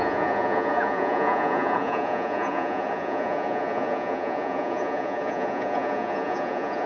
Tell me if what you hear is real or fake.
fake